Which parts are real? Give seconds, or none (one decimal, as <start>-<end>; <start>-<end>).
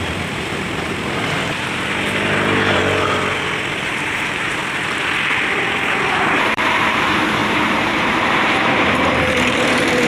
2.8-3.7; 4.6-6.1